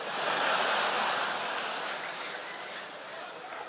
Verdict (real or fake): real